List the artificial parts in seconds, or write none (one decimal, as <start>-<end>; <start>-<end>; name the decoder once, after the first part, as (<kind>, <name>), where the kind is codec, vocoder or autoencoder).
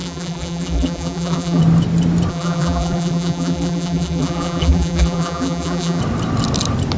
0.0-1.6 (vocoder, BigVGAN v2); 2.3-6.0